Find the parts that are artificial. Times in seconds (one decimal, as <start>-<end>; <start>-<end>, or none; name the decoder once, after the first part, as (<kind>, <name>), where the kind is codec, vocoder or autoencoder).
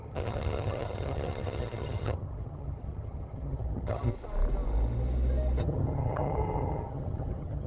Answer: 0.0-4.1 (vocoder, HiFi-GAN); 5.6-7.7